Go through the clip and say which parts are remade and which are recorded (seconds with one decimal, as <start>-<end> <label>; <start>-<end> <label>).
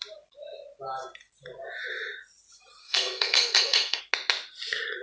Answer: 0.0-2.8 recorded; 2.8-4.0 remade; 4.0-5.0 recorded